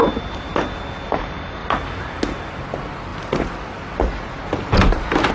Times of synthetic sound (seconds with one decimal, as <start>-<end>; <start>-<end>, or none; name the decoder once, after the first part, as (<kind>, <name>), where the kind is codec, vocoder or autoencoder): none